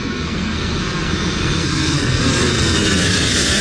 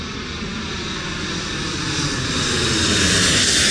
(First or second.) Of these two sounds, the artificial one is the first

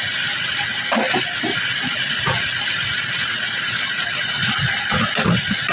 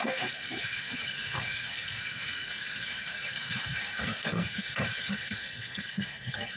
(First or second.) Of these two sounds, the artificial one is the second